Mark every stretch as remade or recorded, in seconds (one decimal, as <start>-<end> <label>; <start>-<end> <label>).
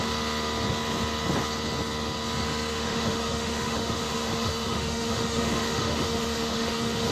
0.0-2.7 recorded; 2.7-7.1 remade